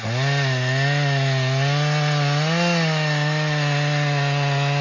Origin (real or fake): real